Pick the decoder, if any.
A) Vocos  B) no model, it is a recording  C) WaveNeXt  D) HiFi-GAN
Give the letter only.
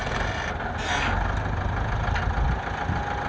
B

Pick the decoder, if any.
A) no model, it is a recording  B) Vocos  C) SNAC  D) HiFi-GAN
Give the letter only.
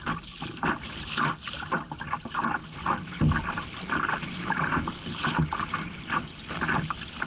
A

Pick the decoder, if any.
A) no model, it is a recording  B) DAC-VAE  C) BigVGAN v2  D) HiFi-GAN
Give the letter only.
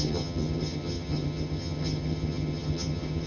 D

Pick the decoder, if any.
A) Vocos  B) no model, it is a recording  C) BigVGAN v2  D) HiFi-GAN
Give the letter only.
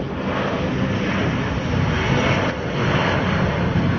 B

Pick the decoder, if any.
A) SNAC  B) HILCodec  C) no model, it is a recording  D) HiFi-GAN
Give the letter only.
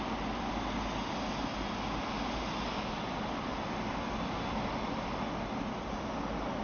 C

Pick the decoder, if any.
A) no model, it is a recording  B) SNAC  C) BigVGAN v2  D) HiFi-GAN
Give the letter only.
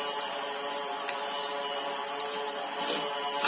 A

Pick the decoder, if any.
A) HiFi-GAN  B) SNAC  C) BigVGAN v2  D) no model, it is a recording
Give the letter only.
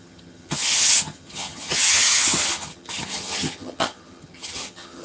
A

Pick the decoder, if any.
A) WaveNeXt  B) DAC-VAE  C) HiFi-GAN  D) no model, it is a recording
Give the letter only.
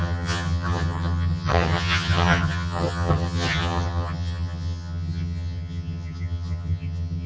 C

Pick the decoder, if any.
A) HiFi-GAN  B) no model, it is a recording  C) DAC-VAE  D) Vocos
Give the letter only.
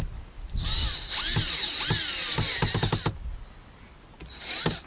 B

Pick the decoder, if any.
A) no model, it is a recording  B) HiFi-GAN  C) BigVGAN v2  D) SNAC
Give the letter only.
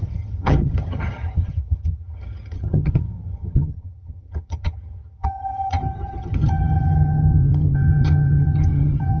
B